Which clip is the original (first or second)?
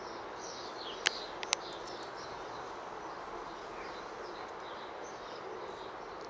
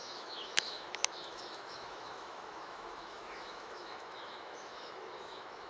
first